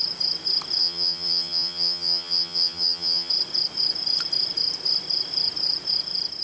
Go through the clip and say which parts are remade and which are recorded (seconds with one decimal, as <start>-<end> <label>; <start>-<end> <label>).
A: 0.0-0.8 recorded; 0.8-3.3 remade; 3.3-6.4 recorded